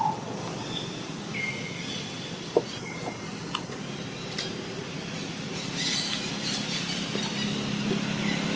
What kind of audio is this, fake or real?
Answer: real